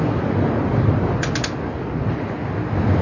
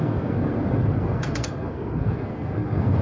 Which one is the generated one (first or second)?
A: second